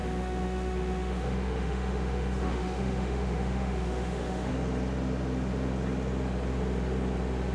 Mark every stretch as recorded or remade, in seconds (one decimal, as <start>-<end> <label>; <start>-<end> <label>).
0.0-4.5 remade; 4.5-7.5 recorded